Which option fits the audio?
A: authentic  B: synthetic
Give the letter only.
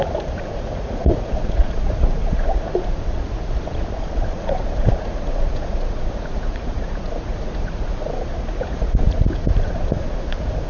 B